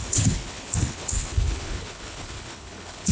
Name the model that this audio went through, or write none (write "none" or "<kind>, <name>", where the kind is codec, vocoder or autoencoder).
codec, HILCodec